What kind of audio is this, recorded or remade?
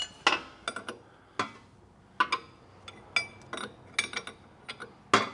recorded